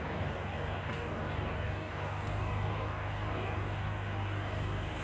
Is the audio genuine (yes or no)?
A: no